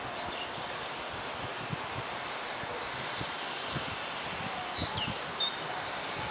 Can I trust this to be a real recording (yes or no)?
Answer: yes